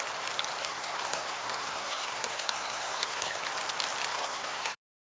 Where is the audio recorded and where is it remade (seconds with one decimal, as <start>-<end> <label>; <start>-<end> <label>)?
0.0-0.6 recorded; 0.6-3.4 remade; 3.4-4.1 recorded; 4.1-5.2 remade